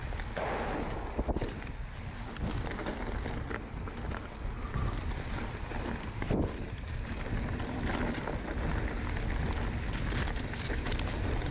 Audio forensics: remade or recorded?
recorded